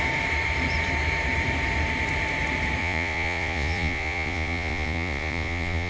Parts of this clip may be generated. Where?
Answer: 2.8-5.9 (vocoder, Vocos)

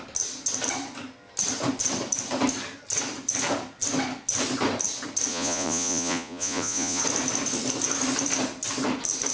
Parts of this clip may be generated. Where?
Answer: 5.3-7.0 (vocoder, Vocos)

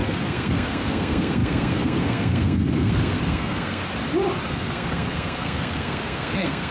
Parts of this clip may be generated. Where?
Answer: 0.0-3.8 (codec, SNAC); 4.5-6.7